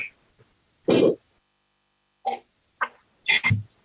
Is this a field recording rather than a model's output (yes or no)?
yes